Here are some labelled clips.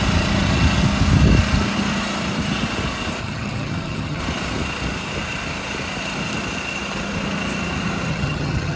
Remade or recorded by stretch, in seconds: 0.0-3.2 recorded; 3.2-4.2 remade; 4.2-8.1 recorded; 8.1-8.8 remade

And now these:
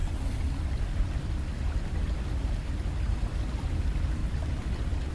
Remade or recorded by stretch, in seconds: 0.0-2.2 remade; 2.2-3.1 recorded; 3.1-3.8 remade; 3.8-4.2 recorded; 4.2-5.1 remade